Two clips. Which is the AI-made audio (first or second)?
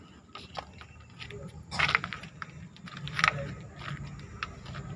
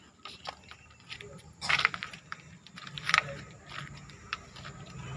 second